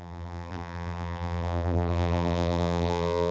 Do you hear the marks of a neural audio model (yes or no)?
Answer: yes